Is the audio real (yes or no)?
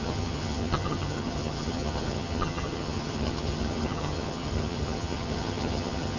no